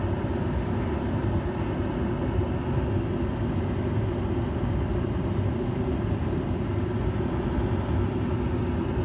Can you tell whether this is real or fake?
real